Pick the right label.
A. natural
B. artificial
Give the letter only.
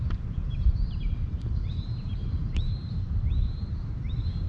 B